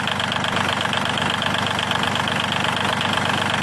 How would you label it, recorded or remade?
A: recorded